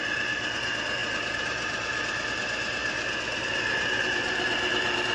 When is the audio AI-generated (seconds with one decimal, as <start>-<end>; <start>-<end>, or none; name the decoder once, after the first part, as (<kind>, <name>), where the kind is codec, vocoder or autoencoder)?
0.0-2.8 (vocoder, BigVGAN v2); 3.7-5.1